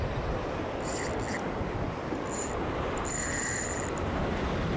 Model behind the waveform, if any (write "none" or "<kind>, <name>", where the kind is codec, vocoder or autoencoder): none